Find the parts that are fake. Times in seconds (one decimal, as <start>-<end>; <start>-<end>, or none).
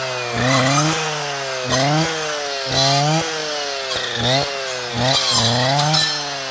none